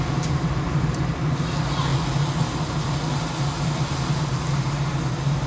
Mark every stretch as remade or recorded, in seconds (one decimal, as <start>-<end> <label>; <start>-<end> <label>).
0.0-5.5 recorded